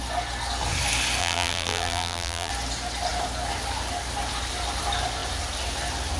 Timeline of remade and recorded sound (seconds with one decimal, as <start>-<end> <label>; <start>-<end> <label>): 0.0-1.2 recorded; 1.2-2.5 remade; 2.5-6.2 recorded